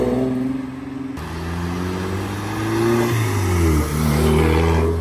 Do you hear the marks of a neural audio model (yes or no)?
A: no